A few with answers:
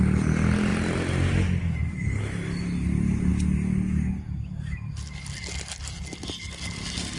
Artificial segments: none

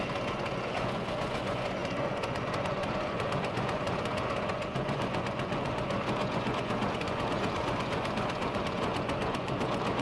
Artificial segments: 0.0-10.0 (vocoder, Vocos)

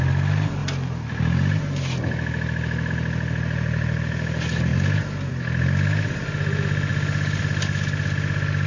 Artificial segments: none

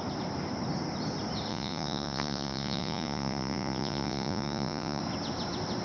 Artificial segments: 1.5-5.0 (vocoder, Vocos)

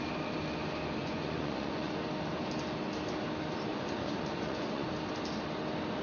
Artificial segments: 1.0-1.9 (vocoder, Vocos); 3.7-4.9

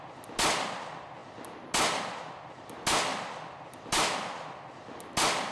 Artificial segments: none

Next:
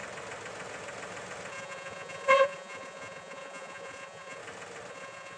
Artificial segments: 1.5-4.4 (vocoder, Vocos); 4.9-5.4

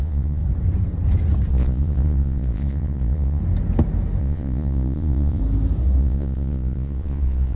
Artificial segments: 0.0-0.4 (vocoder, Vocos); 1.5-3.4; 4.2-5.4; 6.0-7.6